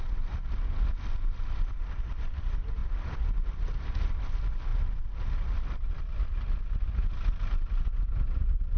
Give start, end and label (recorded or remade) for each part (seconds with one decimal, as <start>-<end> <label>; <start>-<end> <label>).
0.0-2.8 remade; 2.8-4.1 recorded; 4.1-8.8 remade